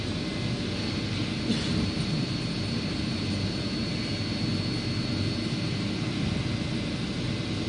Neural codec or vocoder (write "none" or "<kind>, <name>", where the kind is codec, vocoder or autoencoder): none